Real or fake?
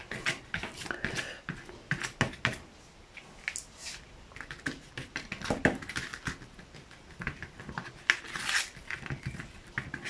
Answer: real